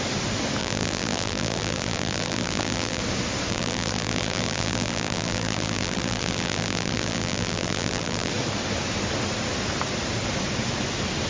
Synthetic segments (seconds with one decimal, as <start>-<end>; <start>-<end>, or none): 0.6-3.0; 3.5-8.3